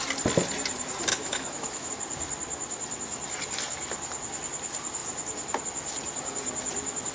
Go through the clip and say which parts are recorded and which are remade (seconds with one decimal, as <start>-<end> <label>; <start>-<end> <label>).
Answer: 0.0-1.1 recorded; 1.1-1.9 remade; 1.9-7.1 recorded